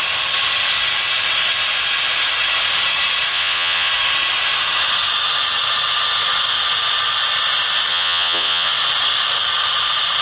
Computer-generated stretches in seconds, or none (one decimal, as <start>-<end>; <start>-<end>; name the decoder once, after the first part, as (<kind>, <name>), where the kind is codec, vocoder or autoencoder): 3.3-3.9 (vocoder, Vocos); 7.9-8.7